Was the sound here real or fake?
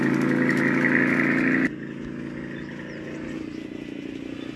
real